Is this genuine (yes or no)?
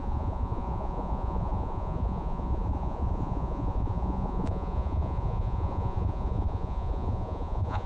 no